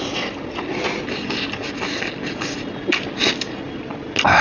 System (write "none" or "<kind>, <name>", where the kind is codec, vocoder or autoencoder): none